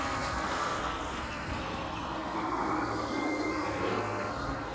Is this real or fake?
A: fake